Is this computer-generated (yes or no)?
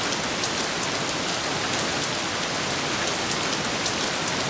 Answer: no